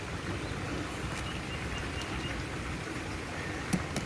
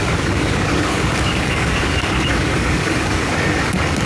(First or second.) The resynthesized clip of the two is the second